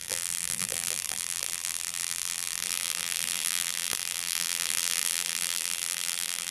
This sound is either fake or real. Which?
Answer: fake